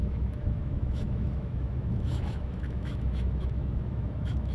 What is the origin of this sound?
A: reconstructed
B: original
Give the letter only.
A